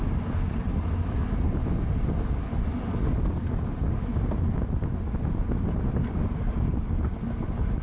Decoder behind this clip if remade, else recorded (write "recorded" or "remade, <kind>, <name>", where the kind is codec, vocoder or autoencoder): recorded